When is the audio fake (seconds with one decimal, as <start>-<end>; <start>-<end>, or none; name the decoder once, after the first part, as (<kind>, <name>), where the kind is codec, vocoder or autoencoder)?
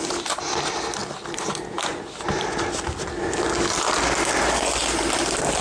none